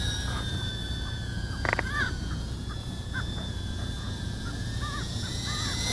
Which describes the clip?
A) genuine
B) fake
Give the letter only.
B